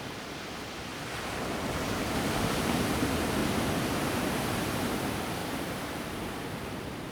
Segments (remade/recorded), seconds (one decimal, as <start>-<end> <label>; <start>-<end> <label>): 0.0-0.9 remade; 0.9-1.9 recorded; 1.9-3.4 remade; 3.4-4.1 recorded; 4.1-7.1 remade